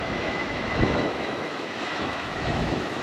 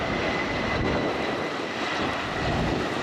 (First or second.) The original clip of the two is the second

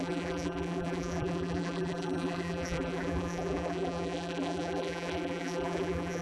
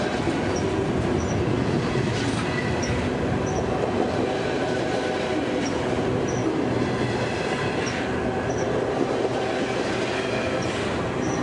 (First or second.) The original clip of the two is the second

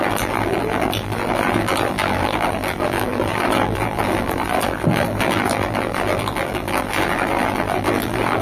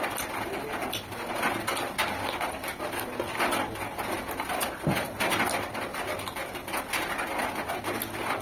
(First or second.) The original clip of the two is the second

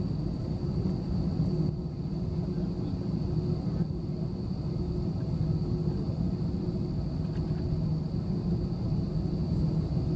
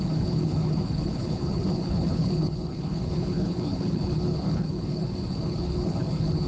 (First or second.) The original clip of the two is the first